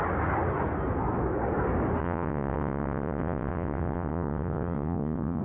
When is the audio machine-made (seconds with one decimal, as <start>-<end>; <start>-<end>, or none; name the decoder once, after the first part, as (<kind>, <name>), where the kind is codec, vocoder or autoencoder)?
2.0-5.4 (vocoder, WaveNeXt)